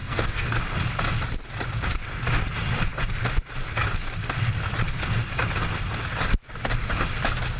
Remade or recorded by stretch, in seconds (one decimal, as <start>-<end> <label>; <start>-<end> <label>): 0.0-0.6 remade; 0.6-7.6 recorded

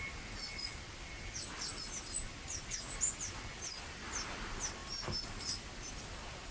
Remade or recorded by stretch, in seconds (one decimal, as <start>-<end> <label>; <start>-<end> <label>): 0.0-6.5 recorded